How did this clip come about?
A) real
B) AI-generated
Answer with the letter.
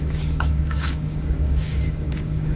B